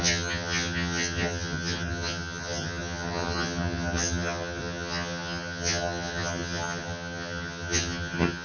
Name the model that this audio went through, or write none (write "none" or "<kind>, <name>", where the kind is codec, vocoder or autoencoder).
vocoder, HiFi-GAN